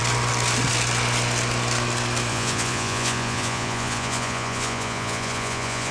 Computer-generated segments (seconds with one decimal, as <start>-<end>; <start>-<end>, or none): 2.3-5.9